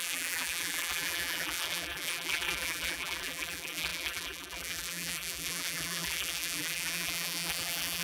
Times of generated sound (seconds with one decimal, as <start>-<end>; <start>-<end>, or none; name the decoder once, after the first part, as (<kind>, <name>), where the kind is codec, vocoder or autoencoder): 0.0-8.0 (vocoder, BigVGAN v2)